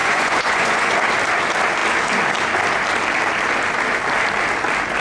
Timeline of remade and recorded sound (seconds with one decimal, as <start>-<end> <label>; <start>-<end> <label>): 0.0-0.9 remade; 0.9-5.0 recorded